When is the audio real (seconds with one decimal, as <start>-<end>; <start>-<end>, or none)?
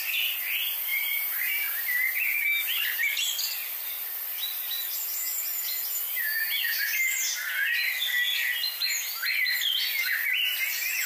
0.0-0.9; 2.1-11.1